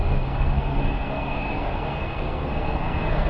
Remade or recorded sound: remade